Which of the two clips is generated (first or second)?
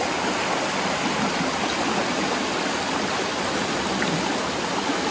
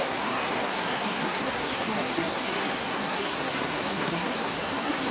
second